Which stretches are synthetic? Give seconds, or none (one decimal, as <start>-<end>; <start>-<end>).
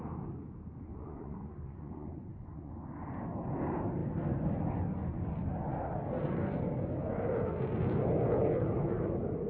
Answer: 0.9-2.7